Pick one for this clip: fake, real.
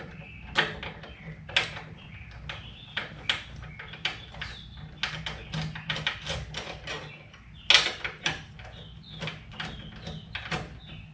real